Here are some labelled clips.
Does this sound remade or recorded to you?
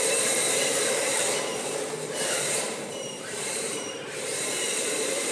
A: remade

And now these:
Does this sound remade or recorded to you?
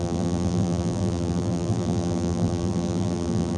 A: remade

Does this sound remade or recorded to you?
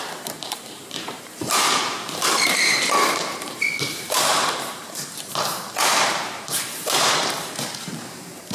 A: remade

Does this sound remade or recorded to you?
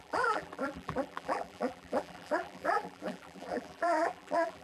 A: remade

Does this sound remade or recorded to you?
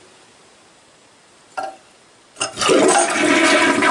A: recorded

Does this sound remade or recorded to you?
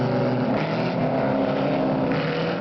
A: recorded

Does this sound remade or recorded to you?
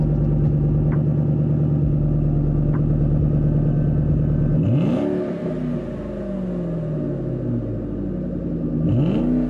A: recorded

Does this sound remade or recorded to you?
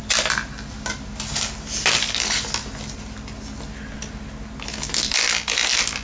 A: recorded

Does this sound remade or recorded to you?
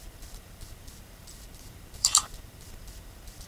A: remade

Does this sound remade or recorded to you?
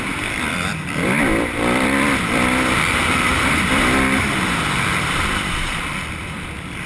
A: remade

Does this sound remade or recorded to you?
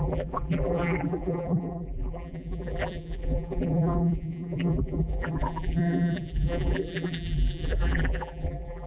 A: remade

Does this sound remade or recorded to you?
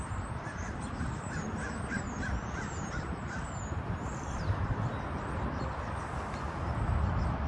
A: remade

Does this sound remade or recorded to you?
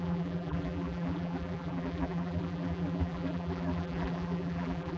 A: remade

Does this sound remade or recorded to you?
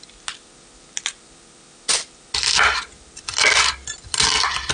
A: recorded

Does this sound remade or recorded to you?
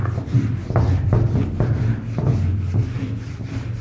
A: remade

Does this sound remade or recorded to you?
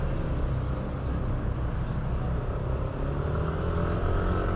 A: recorded